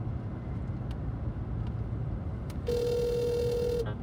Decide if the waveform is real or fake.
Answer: real